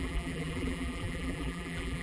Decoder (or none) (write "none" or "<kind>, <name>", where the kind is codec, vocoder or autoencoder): vocoder, BigVGAN v2